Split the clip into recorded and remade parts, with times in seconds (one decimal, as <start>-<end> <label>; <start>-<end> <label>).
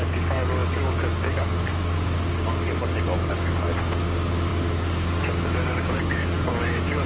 0.0-7.1 remade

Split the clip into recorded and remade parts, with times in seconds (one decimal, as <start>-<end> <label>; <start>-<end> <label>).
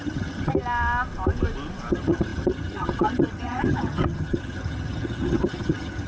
0.0-0.5 remade; 0.5-1.9 recorded; 1.9-6.1 remade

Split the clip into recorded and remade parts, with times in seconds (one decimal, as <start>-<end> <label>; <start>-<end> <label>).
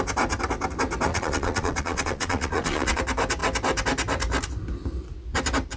0.0-1.1 recorded; 1.1-3.0 remade; 3.0-5.8 recorded